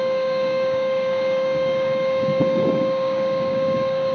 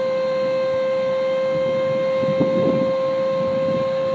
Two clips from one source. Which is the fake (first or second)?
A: first